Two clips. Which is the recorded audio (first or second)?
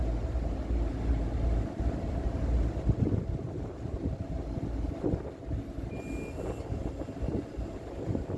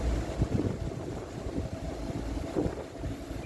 first